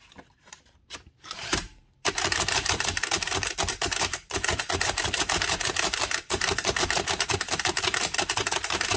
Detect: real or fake fake